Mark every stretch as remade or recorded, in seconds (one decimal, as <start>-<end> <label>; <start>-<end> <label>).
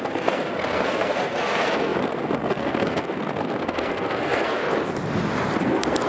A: 0.0-4.6 remade; 4.6-5.6 recorded; 5.6-6.1 remade